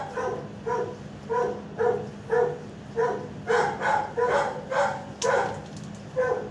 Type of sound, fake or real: real